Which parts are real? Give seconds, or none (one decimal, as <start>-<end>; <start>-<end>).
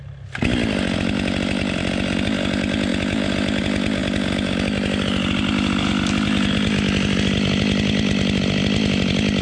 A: 0.0-9.4